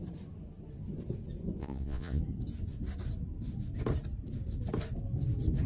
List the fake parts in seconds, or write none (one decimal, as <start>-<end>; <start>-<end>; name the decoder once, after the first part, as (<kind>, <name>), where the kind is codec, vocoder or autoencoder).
1.6-2.2 (vocoder, Vocos)